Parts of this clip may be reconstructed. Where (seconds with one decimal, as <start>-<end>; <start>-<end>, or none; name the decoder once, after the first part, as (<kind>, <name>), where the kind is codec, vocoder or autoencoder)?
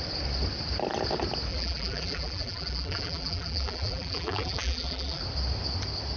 1.5-5.2 (vocoder, BigVGAN v2)